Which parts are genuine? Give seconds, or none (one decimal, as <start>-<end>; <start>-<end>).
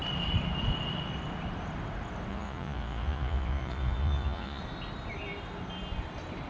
0.0-2.3; 4.6-6.5